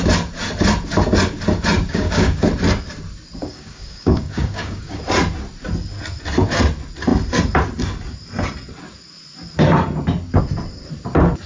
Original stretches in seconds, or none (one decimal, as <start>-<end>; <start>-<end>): 0.0-1.8; 2.5-3.4; 5.0-11.5